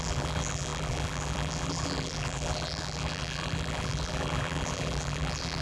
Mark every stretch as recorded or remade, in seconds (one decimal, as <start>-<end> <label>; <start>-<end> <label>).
0.0-5.6 remade